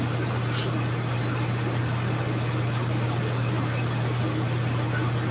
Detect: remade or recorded recorded